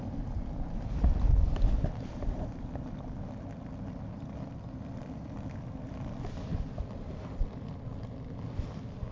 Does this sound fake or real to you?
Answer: real